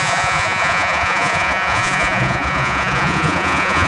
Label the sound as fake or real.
fake